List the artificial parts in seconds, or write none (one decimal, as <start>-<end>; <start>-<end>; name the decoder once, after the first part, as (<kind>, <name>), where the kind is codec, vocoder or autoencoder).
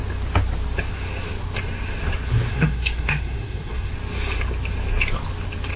2.5-3.9 (codec, SNAC)